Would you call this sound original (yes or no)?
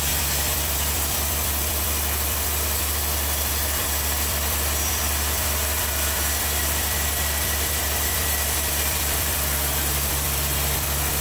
no